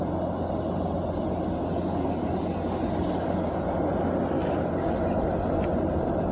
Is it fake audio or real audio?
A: real